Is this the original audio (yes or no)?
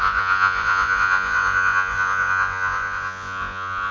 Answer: no